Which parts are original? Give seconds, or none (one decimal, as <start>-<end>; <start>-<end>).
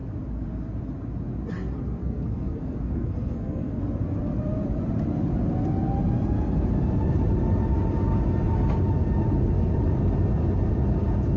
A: 0.0-2.0; 3.8-11.4